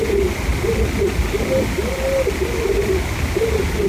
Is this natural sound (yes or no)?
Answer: yes